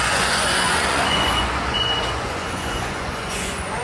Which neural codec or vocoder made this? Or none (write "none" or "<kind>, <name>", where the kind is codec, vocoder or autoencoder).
vocoder, Vocos